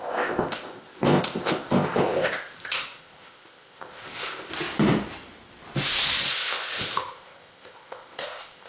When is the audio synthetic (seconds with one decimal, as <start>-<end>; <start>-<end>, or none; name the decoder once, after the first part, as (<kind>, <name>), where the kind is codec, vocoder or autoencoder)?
0.0-4.5 (codec, ZipCodec); 6.3-8.7